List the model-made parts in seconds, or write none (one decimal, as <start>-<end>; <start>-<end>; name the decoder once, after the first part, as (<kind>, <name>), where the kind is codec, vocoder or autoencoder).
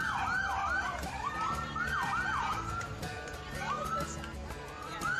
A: 0.6-3.7 (vocoder, BigVGAN v2); 4.4-5.2